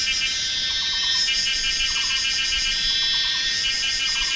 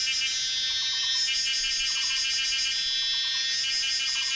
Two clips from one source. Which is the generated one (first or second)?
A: first